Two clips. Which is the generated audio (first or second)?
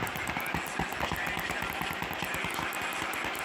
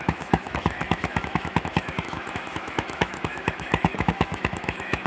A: second